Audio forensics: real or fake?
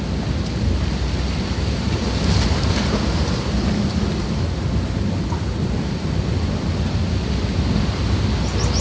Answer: real